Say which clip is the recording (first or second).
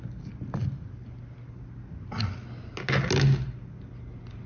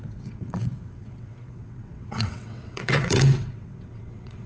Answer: first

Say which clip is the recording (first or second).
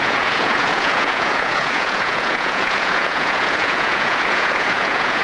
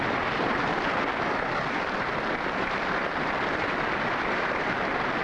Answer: second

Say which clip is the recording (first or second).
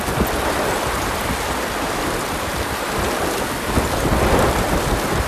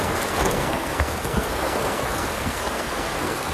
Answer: first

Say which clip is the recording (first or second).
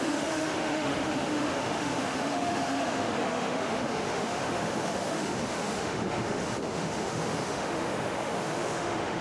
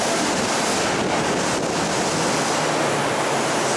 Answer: second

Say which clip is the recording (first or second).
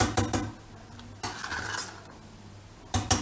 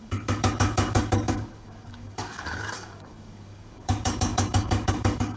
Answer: first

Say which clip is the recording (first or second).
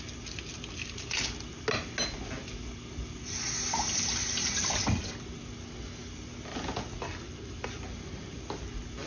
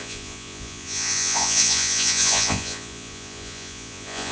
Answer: first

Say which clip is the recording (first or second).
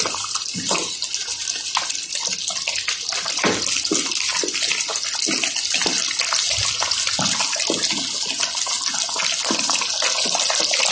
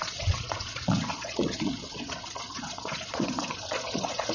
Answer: first